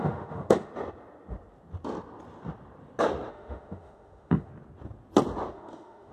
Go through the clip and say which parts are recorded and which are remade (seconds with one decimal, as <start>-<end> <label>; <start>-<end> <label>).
0.0-0.7 remade; 0.7-3.3 recorded; 3.3-4.5 remade; 4.5-5.5 recorded; 5.5-6.1 remade